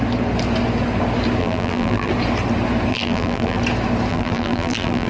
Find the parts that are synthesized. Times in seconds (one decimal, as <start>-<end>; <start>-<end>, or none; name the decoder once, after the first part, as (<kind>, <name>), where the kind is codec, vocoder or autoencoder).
1.4-2.1 (vocoder, BigVGAN v2); 2.9-3.6; 4.1-5.1